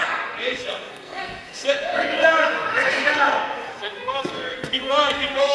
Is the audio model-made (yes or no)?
yes